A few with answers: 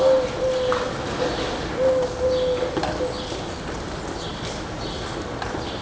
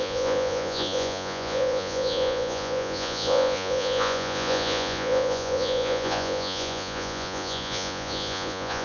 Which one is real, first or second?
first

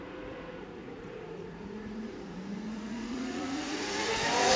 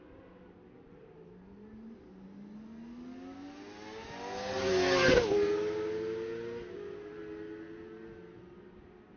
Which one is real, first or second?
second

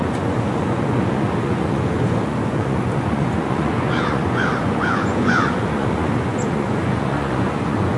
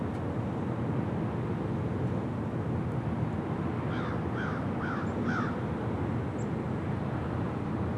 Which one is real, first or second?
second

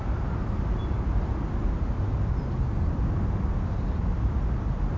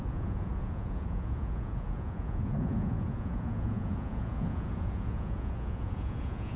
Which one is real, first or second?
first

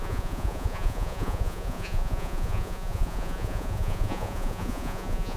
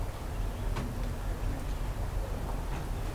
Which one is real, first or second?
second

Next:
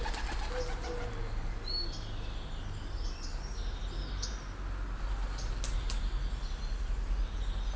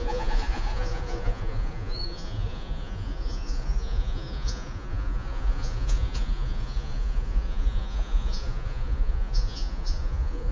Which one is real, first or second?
first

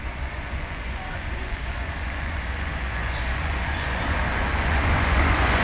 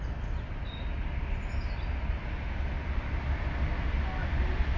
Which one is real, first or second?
second